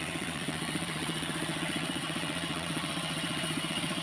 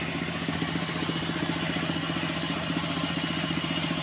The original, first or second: second